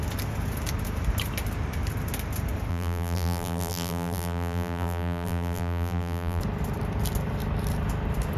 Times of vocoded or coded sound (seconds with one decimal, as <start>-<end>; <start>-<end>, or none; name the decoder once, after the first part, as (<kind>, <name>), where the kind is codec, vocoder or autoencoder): 2.7-6.4 (vocoder, BigVGAN v2)